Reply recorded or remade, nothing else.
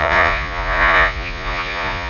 remade